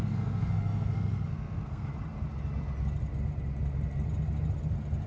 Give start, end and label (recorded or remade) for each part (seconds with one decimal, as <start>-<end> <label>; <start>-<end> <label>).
0.0-1.9 remade; 1.9-5.1 recorded